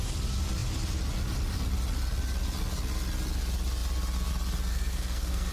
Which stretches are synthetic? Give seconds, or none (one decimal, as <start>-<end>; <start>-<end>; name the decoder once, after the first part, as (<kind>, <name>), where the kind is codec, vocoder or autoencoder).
4.7-5.5 (codec, SNAC)